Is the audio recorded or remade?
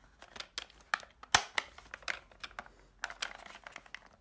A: recorded